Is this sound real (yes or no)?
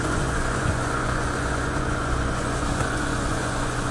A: no